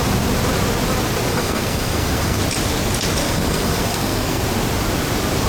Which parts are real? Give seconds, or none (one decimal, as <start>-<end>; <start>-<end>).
0.0-1.3; 2.4-3.2; 4.4-5.5